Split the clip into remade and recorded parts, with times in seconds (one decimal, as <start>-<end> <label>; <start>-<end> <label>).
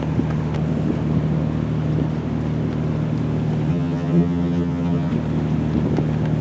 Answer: 0.0-3.7 recorded; 3.7-5.1 remade; 5.1-6.4 recorded